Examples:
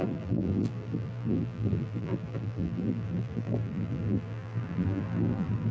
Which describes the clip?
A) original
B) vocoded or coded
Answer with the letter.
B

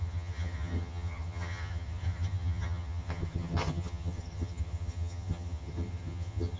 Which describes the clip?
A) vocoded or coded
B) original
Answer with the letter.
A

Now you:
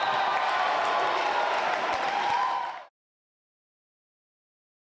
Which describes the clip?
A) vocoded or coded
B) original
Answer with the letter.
B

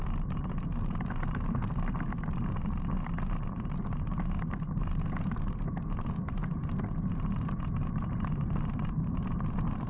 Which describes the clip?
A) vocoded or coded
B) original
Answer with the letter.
B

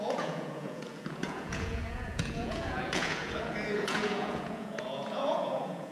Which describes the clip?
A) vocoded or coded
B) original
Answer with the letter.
A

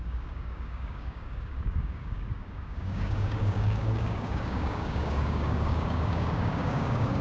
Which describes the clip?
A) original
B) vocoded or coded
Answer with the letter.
B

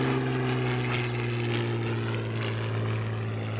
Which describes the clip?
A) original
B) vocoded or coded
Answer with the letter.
A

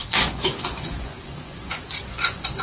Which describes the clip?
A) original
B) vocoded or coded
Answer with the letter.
B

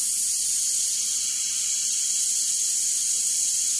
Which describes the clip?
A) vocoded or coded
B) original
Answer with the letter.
B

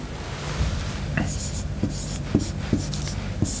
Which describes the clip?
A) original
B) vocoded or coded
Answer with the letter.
A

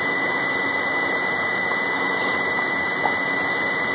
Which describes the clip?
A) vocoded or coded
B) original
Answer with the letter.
B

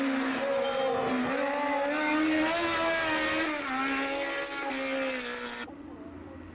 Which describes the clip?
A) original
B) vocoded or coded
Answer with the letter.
A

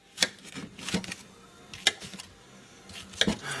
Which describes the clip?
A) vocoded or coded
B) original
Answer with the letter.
B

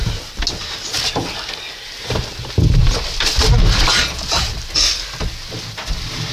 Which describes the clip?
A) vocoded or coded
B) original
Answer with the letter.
B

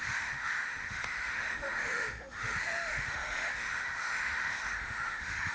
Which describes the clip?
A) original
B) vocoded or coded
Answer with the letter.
B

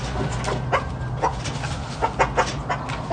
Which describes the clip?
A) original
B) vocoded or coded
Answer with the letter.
A